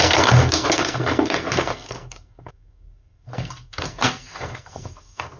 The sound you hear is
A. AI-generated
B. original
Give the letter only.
A